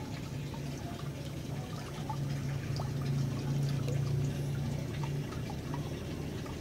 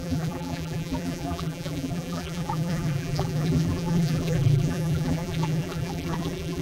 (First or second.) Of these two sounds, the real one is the first